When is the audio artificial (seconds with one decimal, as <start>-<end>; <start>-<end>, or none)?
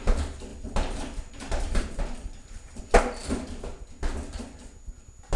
0.5-2.8